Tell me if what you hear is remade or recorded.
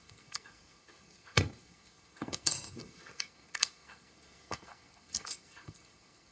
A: remade